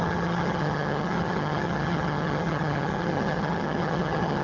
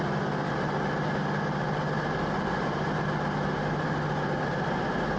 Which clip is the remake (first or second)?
first